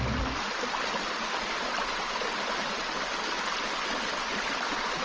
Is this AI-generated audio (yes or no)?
no